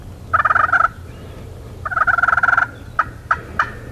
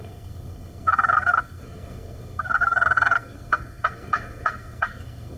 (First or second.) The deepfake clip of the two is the second